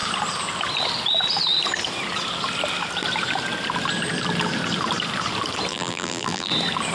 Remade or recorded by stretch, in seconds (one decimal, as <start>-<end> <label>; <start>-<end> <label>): 0.0-5.7 recorded; 5.7-6.5 remade; 6.5-6.9 recorded